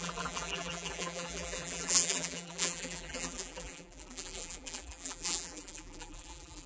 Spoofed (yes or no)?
yes